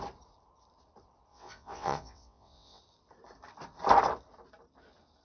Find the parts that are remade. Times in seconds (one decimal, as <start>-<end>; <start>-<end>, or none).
1.3-2.8